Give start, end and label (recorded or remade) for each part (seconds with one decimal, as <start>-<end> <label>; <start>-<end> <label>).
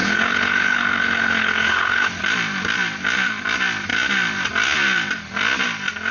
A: 0.0-2.1 remade; 2.1-6.1 recorded